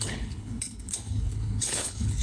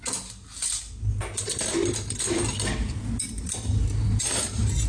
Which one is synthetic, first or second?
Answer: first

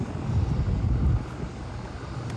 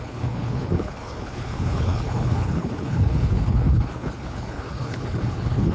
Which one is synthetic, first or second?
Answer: second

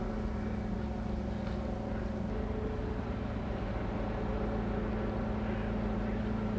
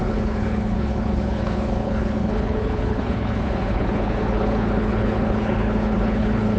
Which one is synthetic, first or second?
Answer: second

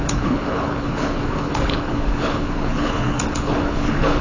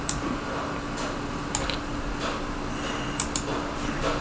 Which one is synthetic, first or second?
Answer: first